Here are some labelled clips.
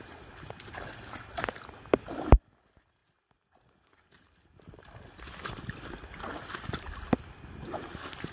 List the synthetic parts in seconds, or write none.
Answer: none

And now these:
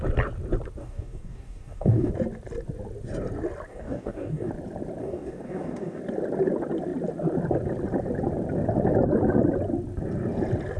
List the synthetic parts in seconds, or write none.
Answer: 0.8-2.1 (codec, DAC); 3.7-4.5; 5.0-6.0